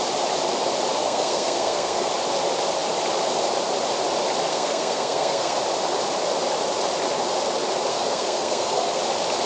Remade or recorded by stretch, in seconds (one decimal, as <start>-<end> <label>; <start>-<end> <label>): 0.0-1.0 recorded; 1.0-2.1 remade; 2.1-4.5 recorded; 4.5-5.6 remade; 5.6-7.9 recorded; 7.9-9.0 remade; 9.0-9.5 recorded